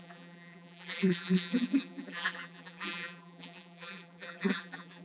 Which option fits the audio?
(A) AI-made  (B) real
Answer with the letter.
A